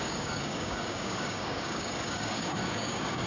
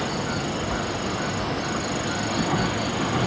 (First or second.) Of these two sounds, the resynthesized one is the first